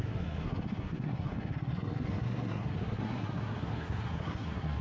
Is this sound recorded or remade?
remade